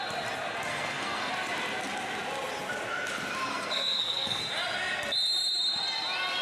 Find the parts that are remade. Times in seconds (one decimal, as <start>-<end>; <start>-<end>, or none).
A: 0.7-1.3; 3.5-4.4

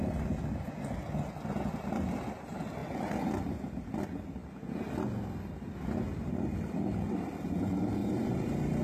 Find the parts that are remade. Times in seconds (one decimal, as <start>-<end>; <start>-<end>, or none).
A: 8.0-8.8

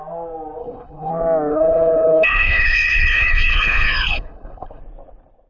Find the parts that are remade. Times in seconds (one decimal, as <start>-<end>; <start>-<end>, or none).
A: 0.6-1.1; 1.5-4.8

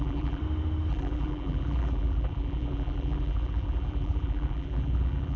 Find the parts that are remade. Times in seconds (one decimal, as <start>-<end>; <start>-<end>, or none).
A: 0.0-0.4; 0.9-5.4

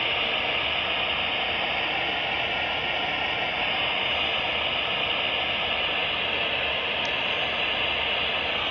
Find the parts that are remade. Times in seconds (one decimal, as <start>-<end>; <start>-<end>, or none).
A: none

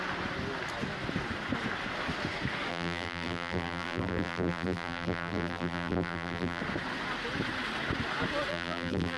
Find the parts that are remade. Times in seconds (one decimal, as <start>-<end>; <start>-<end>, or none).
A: 2.7-6.6; 8.5-9.2